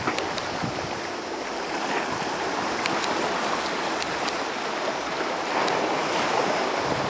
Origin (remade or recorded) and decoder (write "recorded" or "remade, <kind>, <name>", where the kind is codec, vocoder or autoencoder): recorded